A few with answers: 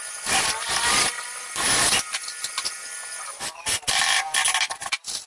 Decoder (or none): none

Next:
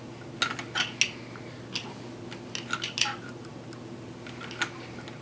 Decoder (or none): none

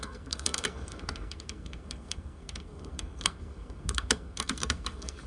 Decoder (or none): codec, SNAC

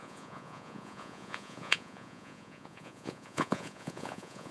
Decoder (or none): vocoder, Vocos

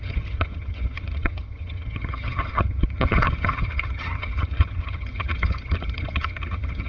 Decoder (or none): vocoder, HiFi-GAN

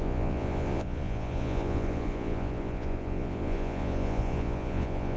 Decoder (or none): vocoder, Vocos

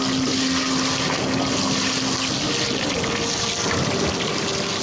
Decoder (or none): none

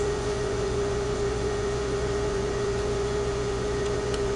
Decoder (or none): vocoder, Vocos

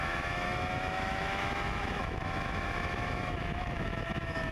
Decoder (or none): autoencoder, DAC-VAE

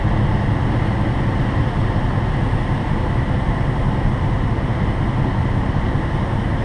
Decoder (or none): none